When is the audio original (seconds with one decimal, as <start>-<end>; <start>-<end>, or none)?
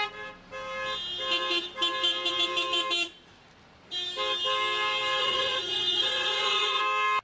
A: 0.0-5.2; 6.8-7.2